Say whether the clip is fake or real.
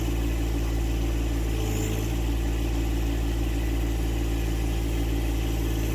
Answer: real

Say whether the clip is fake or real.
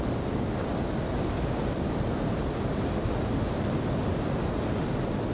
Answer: real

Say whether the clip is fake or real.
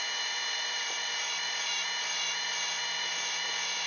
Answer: fake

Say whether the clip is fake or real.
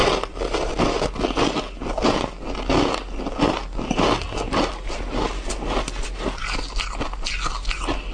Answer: real